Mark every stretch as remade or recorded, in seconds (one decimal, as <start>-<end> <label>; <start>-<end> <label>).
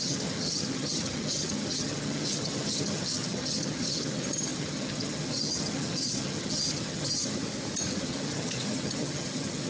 0.0-7.4 remade; 7.4-8.0 recorded; 8.0-9.7 remade